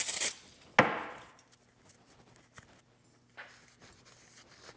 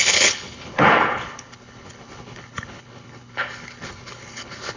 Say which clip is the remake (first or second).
second